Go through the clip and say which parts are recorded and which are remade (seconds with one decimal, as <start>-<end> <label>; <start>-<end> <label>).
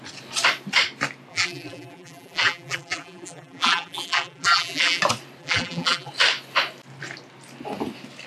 0.0-1.3 recorded; 1.3-5.0 remade; 5.0-5.4 recorded; 5.4-6.1 remade; 6.1-8.3 recorded